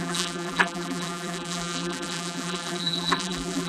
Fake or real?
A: fake